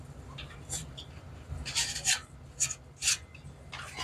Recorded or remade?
recorded